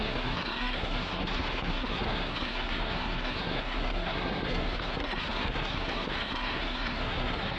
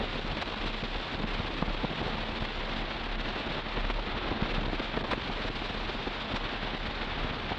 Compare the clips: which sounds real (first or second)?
second